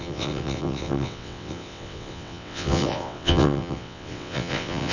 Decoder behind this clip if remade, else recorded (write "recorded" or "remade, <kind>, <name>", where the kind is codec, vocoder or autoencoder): remade, vocoder, WaveNeXt